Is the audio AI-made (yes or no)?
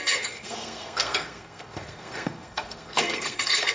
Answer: yes